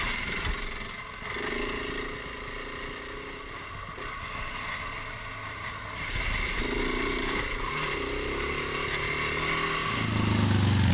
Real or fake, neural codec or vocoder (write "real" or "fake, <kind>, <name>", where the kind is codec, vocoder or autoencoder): real